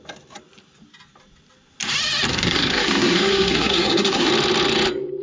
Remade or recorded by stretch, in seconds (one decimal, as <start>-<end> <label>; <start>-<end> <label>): 0.0-2.3 recorded; 2.3-4.3 remade; 4.3-5.2 recorded